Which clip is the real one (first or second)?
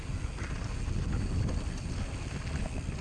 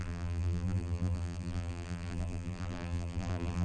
first